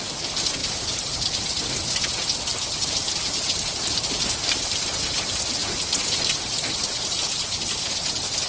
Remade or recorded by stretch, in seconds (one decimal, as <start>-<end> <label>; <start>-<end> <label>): 0.0-0.6 recorded; 0.6-1.6 remade; 1.6-2.5 recorded; 2.5-5.9 remade; 5.9-8.5 recorded